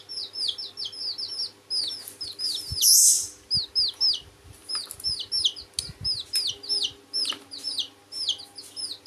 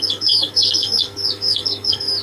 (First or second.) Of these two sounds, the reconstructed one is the second